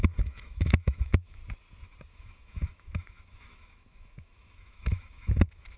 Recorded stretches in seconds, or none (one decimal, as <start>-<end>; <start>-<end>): 1.4-2.1